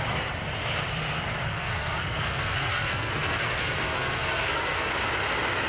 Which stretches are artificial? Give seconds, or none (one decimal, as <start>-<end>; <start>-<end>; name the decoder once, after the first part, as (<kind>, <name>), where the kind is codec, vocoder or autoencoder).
1.5-4.9 (codec, SNAC)